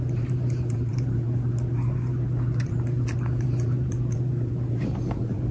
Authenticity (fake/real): fake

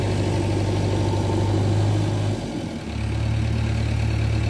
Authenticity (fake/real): real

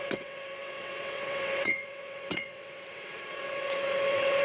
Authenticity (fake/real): fake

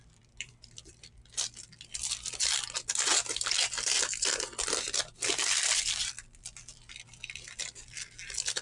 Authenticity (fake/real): fake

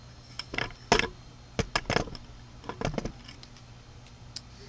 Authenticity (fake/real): real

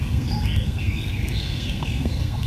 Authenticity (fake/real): fake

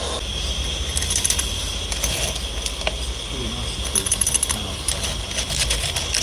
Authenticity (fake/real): real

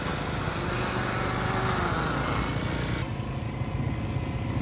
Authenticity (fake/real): real